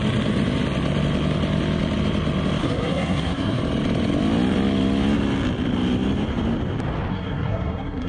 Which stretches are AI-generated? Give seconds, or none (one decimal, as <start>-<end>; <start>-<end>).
2.6-3.6; 7.1-8.1